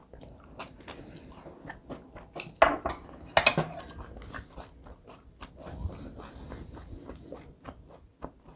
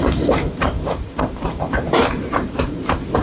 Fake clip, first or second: second